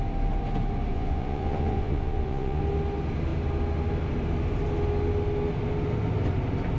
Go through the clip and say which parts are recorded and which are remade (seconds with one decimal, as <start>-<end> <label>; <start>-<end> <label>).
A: 0.0-0.9 recorded; 0.9-2.6 remade; 2.6-6.8 recorded

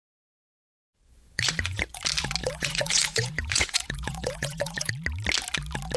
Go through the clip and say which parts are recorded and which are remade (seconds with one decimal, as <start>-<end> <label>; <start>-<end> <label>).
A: 0.0-2.0 remade; 2.0-2.4 recorded; 2.4-4.9 remade; 4.9-6.0 recorded

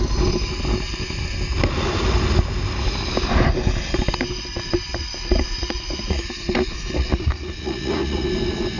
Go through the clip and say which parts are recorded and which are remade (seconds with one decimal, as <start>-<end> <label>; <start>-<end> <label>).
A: 0.0-4.9 recorded; 4.9-8.3 remade; 8.3-8.8 recorded

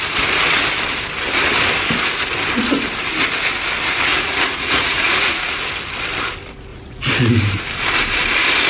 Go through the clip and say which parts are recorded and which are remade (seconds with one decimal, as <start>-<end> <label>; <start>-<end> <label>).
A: 0.0-4.1 recorded; 4.1-5.6 remade; 5.6-6.7 recorded; 6.7-7.3 remade; 7.3-8.7 recorded